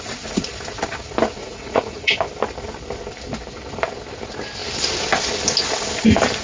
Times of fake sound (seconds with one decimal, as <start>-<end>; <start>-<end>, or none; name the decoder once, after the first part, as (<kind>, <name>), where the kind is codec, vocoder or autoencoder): 1.4-2.2 (vocoder, Vocos)